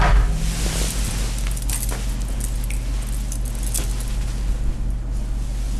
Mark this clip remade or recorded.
recorded